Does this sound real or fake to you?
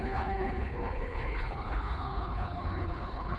fake